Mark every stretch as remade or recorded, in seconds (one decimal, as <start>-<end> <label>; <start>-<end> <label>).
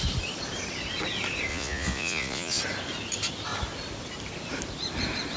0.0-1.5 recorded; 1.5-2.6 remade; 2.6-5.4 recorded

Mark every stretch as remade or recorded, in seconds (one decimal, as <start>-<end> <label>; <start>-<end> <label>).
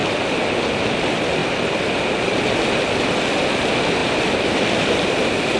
0.0-1.4 recorded; 1.4-2.7 remade; 2.7-4.0 recorded; 4.0-4.9 remade; 4.9-5.6 recorded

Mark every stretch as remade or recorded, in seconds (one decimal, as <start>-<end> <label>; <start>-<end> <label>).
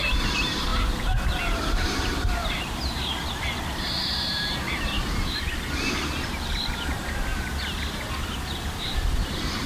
0.0-7.3 remade; 7.3-8.7 recorded; 8.7-9.7 remade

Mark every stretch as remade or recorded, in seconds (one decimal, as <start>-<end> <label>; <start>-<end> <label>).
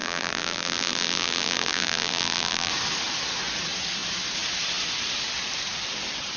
0.0-2.7 remade; 2.7-6.4 recorded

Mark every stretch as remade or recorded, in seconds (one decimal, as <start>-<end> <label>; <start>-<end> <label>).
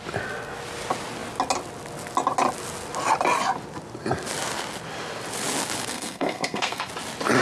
0.0-5.9 recorded; 5.9-6.9 remade; 6.9-7.4 recorded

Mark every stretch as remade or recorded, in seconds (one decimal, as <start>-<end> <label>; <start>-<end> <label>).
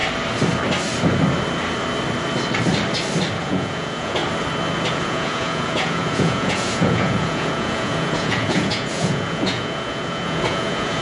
0.0-3.4 recorded; 3.4-4.2 remade; 4.2-4.9 recorded; 4.9-11.0 remade